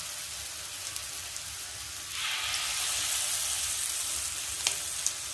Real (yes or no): yes